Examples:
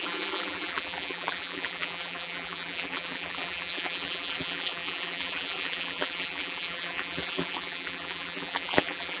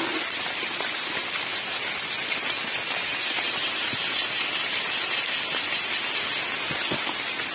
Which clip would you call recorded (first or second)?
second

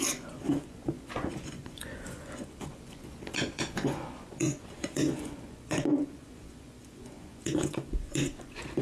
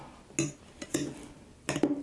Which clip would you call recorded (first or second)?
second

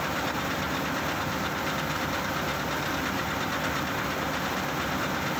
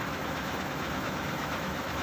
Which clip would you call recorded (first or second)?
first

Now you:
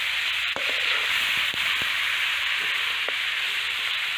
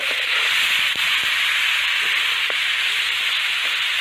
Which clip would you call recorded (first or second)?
second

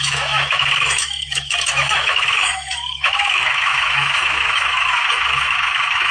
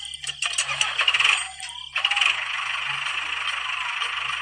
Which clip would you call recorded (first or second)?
second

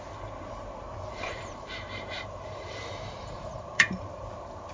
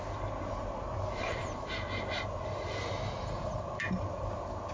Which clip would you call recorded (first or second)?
second